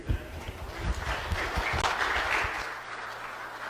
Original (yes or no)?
yes